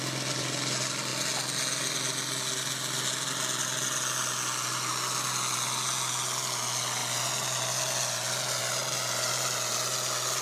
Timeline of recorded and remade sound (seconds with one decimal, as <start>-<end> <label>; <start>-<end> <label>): 0.0-10.4 recorded